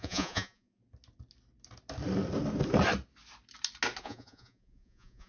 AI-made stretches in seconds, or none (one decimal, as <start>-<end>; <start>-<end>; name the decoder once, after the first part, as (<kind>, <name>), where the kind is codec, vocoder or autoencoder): 0.0-0.8 (vocoder, Vocos); 4.0-5.3